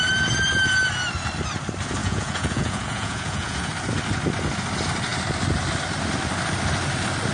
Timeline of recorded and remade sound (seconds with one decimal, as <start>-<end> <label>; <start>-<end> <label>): 0.0-2.0 recorded; 2.0-3.7 remade; 3.7-7.3 recorded